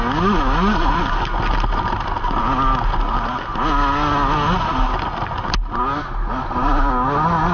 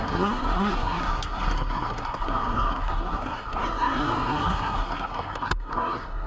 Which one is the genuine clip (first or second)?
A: first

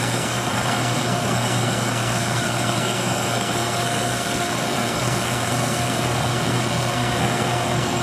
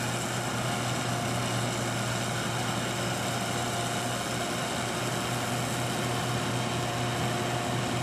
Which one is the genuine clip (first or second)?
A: second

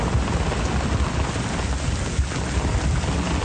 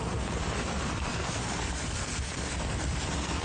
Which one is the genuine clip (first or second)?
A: first